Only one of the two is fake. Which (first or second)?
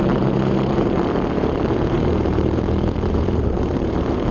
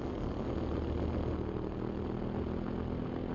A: first